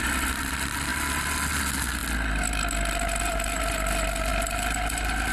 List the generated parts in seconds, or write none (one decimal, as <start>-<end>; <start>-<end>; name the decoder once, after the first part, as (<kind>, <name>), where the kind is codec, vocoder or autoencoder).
none